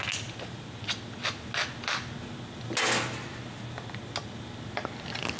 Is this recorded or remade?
recorded